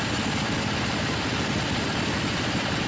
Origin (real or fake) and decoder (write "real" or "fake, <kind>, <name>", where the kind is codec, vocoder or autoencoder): real